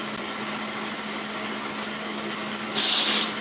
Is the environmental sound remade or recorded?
recorded